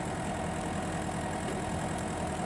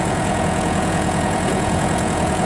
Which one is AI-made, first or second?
second